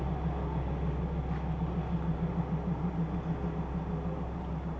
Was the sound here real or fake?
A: real